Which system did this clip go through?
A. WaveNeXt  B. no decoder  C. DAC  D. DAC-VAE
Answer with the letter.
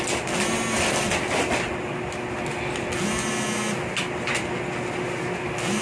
B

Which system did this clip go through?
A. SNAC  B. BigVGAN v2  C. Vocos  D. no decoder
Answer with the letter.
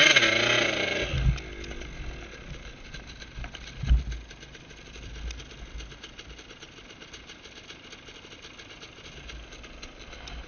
D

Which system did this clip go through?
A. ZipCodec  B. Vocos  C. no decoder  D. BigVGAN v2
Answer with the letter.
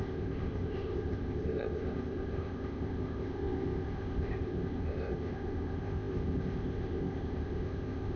A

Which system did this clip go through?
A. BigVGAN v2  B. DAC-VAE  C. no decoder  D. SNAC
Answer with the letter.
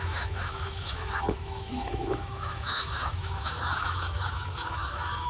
B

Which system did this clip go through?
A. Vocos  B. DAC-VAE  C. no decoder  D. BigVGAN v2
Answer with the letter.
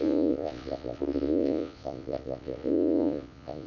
A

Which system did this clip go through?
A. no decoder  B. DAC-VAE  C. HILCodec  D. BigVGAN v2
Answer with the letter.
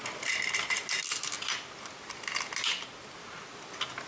A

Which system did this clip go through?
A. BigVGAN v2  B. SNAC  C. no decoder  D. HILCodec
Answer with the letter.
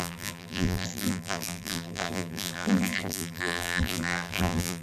A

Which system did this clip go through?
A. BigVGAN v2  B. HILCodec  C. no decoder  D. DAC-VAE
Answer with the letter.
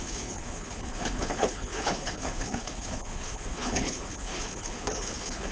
B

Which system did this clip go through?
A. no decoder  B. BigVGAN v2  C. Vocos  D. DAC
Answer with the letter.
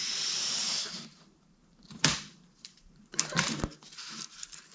B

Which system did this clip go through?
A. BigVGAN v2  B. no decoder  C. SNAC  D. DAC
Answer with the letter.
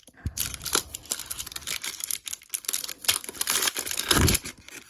A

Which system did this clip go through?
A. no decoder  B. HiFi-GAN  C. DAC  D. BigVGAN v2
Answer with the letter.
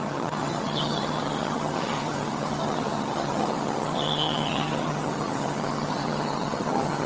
B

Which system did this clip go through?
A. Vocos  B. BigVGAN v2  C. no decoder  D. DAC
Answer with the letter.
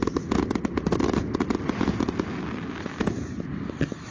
C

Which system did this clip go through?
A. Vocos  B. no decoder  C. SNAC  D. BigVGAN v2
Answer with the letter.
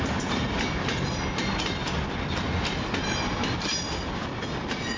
B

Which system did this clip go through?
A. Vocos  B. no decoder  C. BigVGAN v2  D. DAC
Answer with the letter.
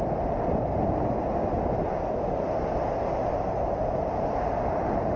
B